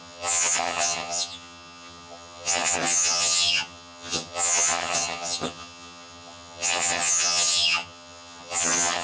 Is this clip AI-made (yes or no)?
yes